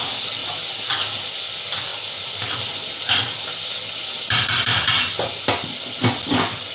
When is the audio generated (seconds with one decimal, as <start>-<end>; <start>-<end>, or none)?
none

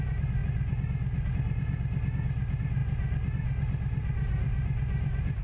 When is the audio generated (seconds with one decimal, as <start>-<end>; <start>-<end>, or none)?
none

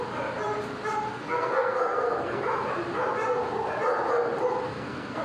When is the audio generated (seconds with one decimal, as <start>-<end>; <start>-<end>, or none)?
1.1-2.4; 4.7-5.2

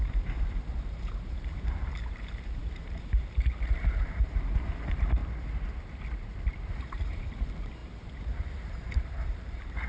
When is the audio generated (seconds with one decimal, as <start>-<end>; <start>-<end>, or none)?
0.0-5.2; 6.7-9.9

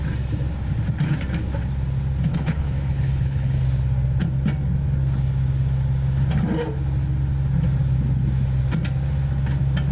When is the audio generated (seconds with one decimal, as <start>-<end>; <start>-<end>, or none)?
2.3-3.6

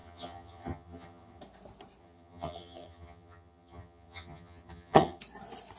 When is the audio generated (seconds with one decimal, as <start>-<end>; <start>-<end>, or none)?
0.0-1.4; 2.0-5.2

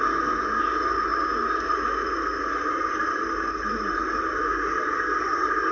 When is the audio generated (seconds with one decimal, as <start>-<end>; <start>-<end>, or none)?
none

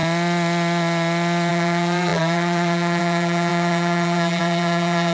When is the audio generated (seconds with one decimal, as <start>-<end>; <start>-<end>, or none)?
1.5-5.1